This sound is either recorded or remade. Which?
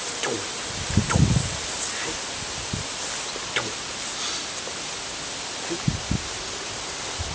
recorded